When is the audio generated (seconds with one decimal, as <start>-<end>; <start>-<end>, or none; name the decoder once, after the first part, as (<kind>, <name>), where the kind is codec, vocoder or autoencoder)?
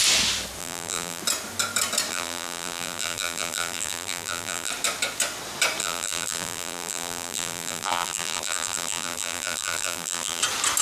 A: 0.6-1.2 (vocoder, BigVGAN v2); 2.1-4.7; 5.8-10.4